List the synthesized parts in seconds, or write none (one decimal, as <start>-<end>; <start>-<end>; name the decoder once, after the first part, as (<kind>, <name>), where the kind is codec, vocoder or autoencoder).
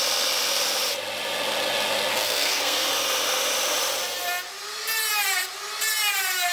2.1-2.9 (codec, SNAC)